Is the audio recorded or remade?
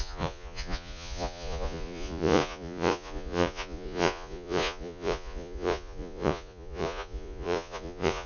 remade